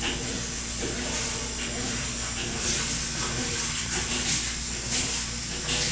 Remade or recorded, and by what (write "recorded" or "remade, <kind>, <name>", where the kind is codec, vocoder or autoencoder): recorded